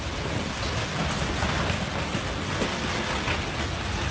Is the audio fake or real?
real